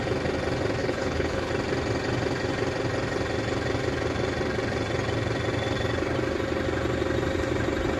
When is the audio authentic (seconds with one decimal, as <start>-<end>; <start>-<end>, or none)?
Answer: 0.0-0.8; 1.5-8.0